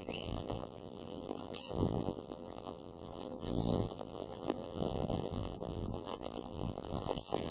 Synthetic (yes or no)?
yes